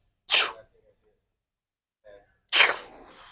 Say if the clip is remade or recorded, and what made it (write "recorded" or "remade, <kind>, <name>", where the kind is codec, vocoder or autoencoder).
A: recorded